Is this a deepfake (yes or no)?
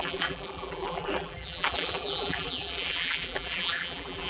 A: yes